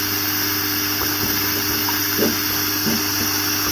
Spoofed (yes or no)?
no